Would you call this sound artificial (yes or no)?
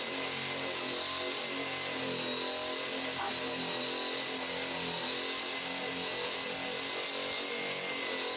no